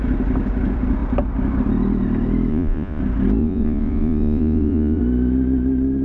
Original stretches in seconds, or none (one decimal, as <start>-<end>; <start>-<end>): 0.0-2.5; 3.0-3.4; 5.0-6.0